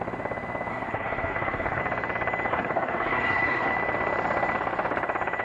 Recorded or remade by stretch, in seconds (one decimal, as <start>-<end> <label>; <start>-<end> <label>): 0.0-0.7 recorded; 0.7-1.8 remade; 1.8-2.5 recorded; 2.5-3.7 remade; 3.7-5.4 recorded